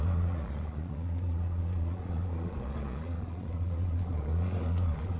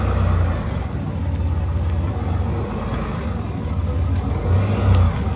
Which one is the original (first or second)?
second